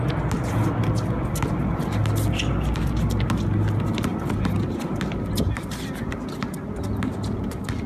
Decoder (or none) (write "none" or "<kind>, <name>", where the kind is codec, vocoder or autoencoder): none